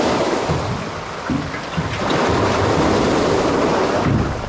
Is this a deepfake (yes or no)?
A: no